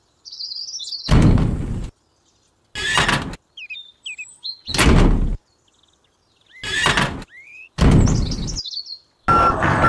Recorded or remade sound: recorded